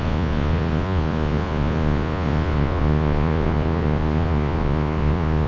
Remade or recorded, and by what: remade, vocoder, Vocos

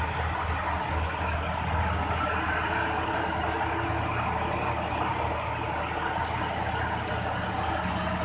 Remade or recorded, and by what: recorded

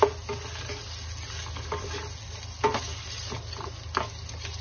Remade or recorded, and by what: recorded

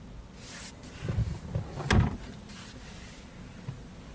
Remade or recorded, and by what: recorded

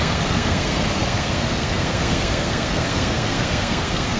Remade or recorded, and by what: remade, codec, SNAC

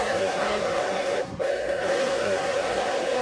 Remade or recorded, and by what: remade, codec, SNAC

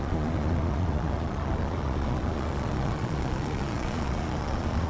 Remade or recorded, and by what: remade, vocoder, Vocos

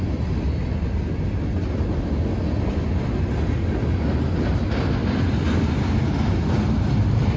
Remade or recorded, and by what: recorded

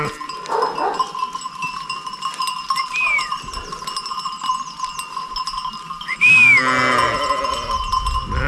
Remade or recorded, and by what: recorded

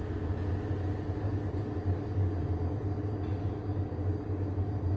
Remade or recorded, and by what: recorded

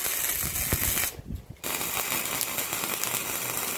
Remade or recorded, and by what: recorded